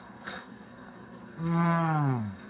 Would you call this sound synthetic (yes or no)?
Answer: yes